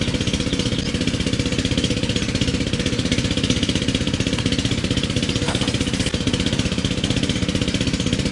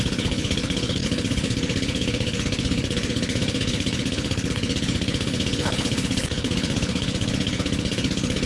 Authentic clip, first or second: first